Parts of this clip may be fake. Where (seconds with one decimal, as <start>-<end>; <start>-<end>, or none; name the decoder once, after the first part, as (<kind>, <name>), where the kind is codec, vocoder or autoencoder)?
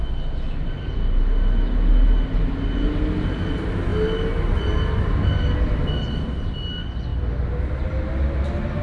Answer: none